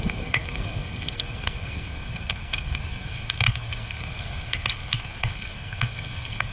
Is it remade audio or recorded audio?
remade